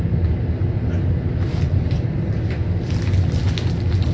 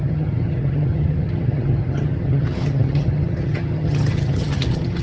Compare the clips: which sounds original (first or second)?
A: first